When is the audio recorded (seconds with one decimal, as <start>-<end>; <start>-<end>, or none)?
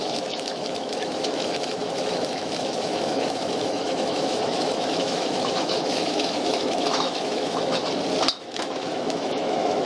7.8-8.4